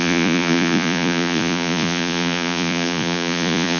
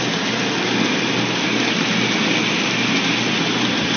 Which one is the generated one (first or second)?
first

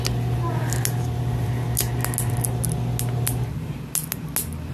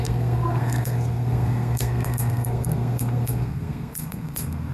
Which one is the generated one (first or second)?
second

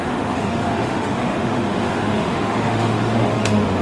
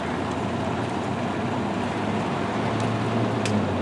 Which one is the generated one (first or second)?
first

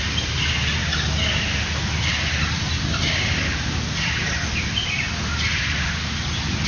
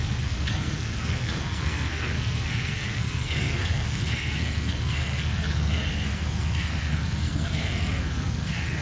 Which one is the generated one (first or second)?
second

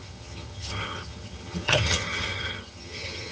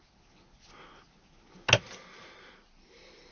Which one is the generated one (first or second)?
first